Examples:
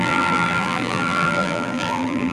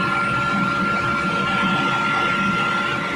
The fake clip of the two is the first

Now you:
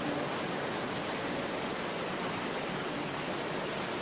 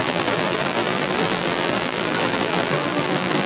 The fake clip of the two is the second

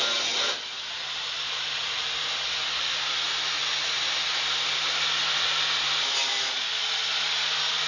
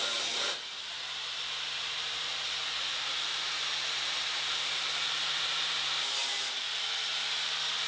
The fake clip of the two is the second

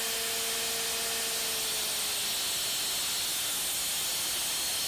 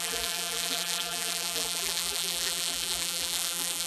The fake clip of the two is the second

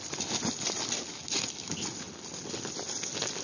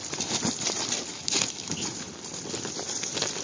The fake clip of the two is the second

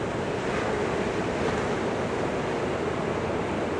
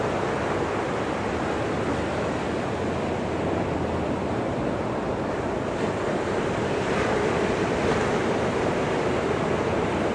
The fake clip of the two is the second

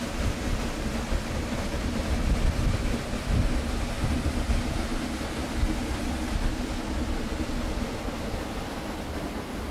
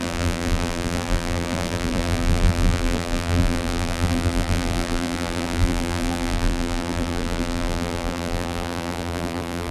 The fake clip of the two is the second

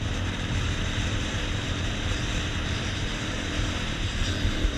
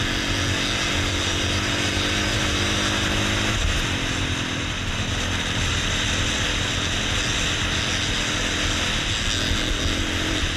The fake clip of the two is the first